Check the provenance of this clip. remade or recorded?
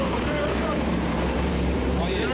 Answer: remade